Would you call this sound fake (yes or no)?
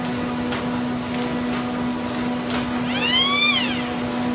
no